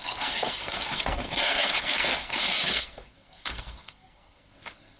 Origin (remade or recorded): remade